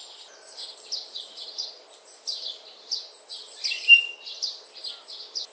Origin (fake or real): real